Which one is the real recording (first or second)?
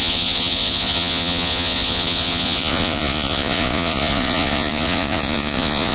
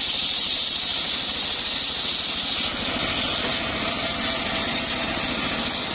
second